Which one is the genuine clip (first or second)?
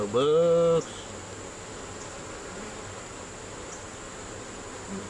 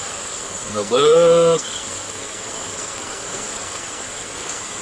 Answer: first